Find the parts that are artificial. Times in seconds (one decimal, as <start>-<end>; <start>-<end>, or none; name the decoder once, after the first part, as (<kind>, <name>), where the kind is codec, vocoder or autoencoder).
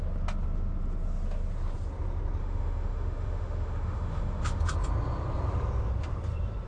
2.4-4.6 (autoencoder, DAC-VAE)